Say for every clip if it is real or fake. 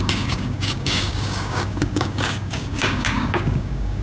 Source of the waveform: fake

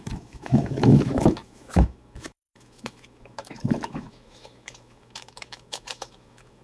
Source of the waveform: fake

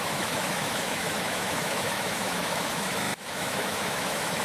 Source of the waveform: fake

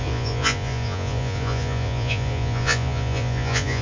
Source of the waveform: fake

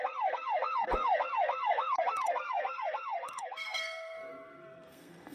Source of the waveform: fake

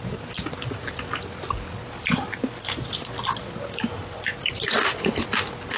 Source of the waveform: real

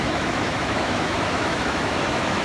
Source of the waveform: fake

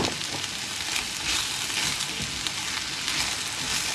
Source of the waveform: real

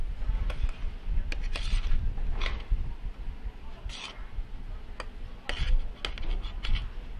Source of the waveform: real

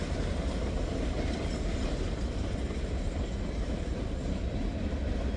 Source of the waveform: real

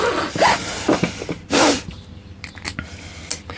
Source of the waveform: real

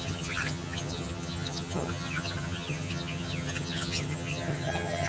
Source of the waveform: fake